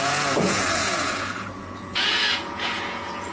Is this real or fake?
fake